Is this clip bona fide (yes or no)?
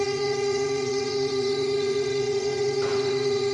no